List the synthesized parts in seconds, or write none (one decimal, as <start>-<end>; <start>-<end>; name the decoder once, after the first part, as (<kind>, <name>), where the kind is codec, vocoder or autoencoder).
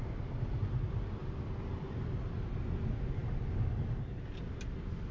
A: none